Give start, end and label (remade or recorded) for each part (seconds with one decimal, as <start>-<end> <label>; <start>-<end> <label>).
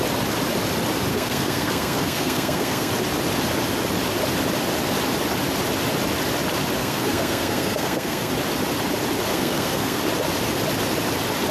0.0-1.1 recorded; 1.1-2.9 remade; 2.9-6.8 recorded; 6.8-8.3 remade; 8.3-9.3 recorded; 9.3-10.0 remade; 10.0-11.5 recorded